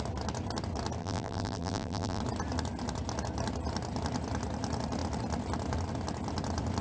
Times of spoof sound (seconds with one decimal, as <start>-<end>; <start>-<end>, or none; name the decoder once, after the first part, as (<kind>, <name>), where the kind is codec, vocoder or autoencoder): 1.0-2.2 (vocoder, BigVGAN v2)